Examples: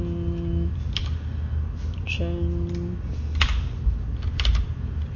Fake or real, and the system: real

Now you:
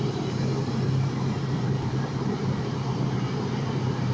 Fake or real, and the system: fake, vocoder, BigVGAN v2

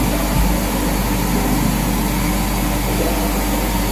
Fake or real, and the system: real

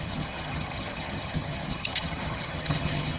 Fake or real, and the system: fake, vocoder, HiFi-GAN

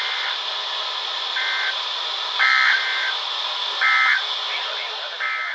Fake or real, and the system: fake, vocoder, BigVGAN v2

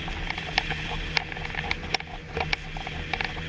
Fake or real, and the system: real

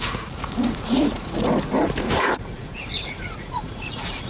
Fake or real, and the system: fake, vocoder, Vocos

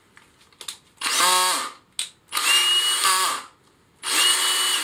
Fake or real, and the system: real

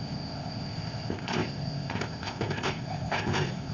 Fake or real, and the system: fake, codec, ZipCodec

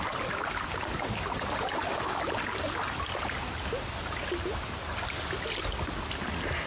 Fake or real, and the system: real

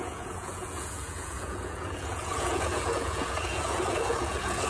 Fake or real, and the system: fake, vocoder, Vocos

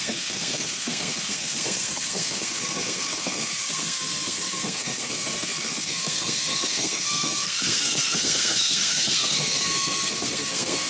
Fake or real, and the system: fake, codec, SNAC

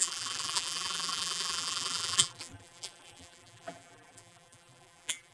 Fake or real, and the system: fake, vocoder, BigVGAN v2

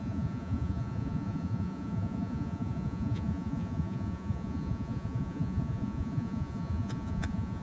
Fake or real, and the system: fake, vocoder, Vocos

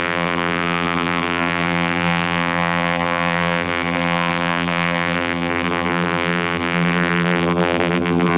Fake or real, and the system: fake, vocoder, BigVGAN v2